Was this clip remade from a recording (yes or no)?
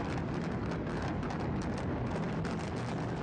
no